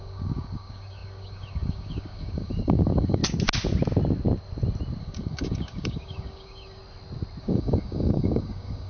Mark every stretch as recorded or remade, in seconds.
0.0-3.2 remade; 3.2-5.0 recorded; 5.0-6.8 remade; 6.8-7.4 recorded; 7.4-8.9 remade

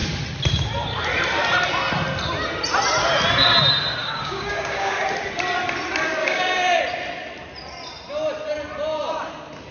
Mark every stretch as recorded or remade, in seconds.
0.0-4.0 recorded; 4.0-5.1 remade; 5.1-6.2 recorded; 6.2-6.8 remade; 6.8-9.7 recorded

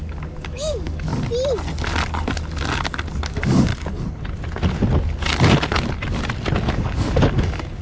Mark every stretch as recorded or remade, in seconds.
0.0-1.1 remade; 1.1-3.3 recorded; 3.3-3.7 remade; 3.7-6.7 recorded; 6.7-7.8 remade

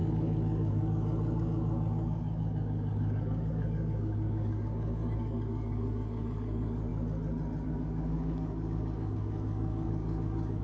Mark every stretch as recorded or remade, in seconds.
0.0-6.9 remade; 6.9-7.7 recorded; 7.7-10.6 remade

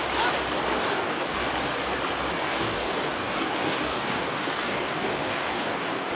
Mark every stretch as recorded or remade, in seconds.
0.0-0.8 recorded; 0.8-1.5 remade; 1.5-2.4 recorded; 2.4-6.1 remade

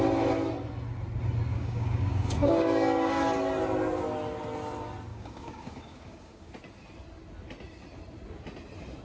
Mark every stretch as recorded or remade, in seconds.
0.0-1.5 recorded; 1.5-3.2 remade; 3.2-5.1 recorded; 5.1-6.5 remade; 6.5-9.0 recorded

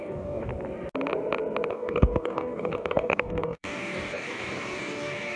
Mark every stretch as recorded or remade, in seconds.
0.0-0.5 remade; 0.5-1.7 recorded; 1.7-5.4 remade